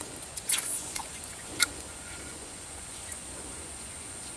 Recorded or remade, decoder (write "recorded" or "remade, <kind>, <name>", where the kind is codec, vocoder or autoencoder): remade, vocoder, Vocos